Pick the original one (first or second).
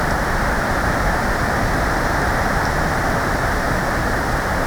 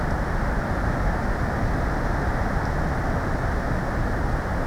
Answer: second